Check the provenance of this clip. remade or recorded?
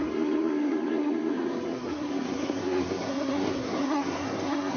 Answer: remade